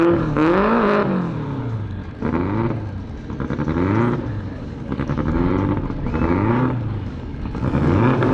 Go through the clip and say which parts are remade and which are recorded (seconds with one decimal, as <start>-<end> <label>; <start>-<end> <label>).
0.0-1.0 remade; 1.0-1.6 recorded; 1.6-2.0 remade; 2.0-4.3 recorded; 4.3-5.5 remade; 5.5-6.5 recorded; 6.5-8.3 remade